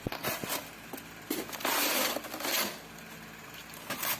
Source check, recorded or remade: recorded